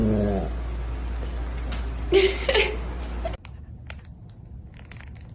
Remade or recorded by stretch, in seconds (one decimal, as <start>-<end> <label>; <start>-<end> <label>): 0.0-5.3 recorded

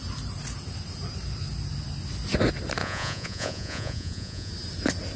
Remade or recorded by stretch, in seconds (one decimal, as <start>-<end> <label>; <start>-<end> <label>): 0.0-2.8 recorded; 2.8-4.5 remade; 4.5-5.2 recorded

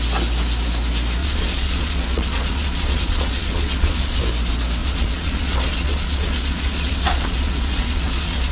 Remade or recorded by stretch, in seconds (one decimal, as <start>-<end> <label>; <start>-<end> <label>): 0.0-1.2 recorded; 1.2-4.2 remade; 4.2-4.8 recorded; 4.8-8.5 remade

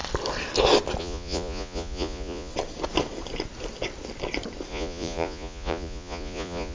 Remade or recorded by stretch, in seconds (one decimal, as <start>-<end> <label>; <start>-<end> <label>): 0.0-1.0 recorded; 1.0-2.5 remade; 2.5-4.7 recorded; 4.7-6.7 remade

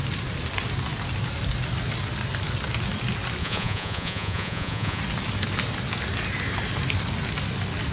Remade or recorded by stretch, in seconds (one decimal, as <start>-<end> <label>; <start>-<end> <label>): 0.0-3.4 recorded; 3.4-5.0 remade; 5.0-7.9 recorded

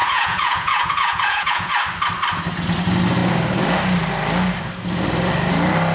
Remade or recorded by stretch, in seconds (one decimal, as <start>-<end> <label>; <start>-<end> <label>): 0.0-1.7 remade; 1.7-5.9 recorded

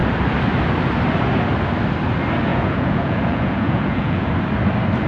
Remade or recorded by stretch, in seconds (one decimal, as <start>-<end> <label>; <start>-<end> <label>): 0.0-2.5 recorded; 2.5-4.3 remade; 4.3-5.1 recorded

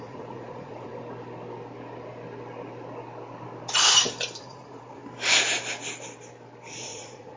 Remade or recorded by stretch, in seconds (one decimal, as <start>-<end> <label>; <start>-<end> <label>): 0.0-0.9 remade; 0.9-4.4 recorded; 4.4-5.0 remade; 5.0-6.7 recorded; 6.7-7.4 remade